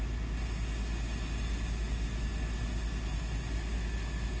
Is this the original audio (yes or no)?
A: yes